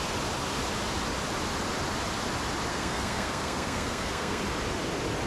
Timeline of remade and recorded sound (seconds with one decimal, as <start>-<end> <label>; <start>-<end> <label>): 0.0-2.7 recorded; 2.7-4.4 remade; 4.4-5.3 recorded